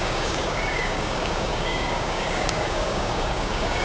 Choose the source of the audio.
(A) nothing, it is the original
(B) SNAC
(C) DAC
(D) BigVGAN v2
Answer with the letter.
C